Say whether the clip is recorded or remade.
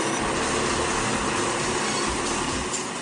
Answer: recorded